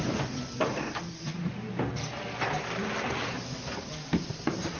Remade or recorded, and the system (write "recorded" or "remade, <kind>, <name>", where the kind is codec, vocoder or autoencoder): recorded